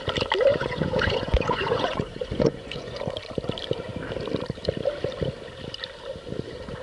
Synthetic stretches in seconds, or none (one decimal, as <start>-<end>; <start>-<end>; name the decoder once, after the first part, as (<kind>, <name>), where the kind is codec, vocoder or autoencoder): 0.5-3.0 (vocoder, Vocos)